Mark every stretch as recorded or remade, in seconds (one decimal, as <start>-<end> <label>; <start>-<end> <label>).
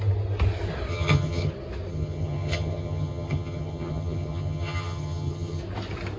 0.0-0.9 recorded; 0.9-1.5 remade; 1.5-1.9 recorded; 1.9-5.6 remade; 5.6-6.2 recorded